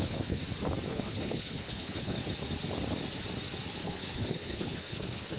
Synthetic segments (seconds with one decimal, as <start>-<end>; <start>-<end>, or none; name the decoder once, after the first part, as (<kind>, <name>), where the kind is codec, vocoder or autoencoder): 0.0-0.4 (codec, HILCodec); 0.9-2.2; 3.8-5.4